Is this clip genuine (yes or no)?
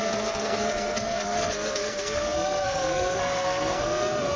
no